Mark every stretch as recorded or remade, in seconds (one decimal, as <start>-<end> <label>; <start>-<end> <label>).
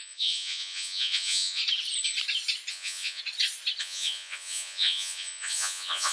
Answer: 0.0-1.6 remade; 1.6-2.7 recorded; 2.7-3.2 remade; 3.2-3.8 recorded; 3.8-6.1 remade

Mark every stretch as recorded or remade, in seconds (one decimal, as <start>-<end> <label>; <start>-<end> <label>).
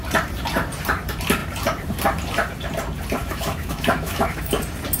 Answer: 0.0-3.2 recorded; 3.2-4.5 remade; 4.5-5.0 recorded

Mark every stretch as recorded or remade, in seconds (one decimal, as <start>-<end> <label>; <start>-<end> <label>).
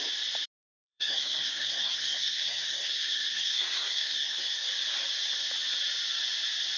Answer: 0.0-0.6 recorded; 0.6-4.7 remade; 4.7-6.8 recorded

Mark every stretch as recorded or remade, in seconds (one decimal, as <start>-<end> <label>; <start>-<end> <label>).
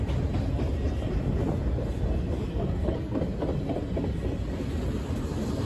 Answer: 0.0-2.5 recorded; 2.5-3.2 remade; 3.2-5.7 recorded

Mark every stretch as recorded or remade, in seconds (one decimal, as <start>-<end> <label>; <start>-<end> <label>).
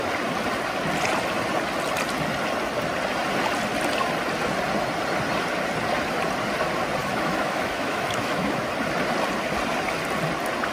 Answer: 0.0-7.0 recorded; 7.0-8.6 remade; 8.6-10.7 recorded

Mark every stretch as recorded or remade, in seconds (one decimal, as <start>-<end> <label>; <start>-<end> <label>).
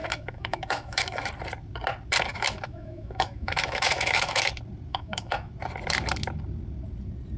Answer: 0.0-1.3 remade; 1.3-2.3 recorded; 2.3-4.5 remade; 4.5-4.9 recorded; 4.9-5.5 remade; 5.5-7.4 recorded